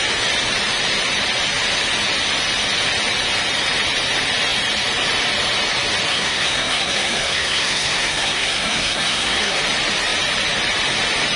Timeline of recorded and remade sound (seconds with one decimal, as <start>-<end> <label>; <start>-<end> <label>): 0.0-6.1 recorded; 6.1-9.6 remade; 9.6-11.4 recorded